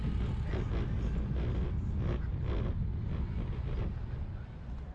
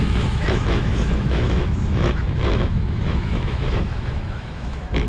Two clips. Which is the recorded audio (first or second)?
first